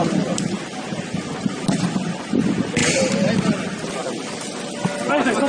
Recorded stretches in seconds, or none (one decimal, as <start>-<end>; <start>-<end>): 0.0-5.5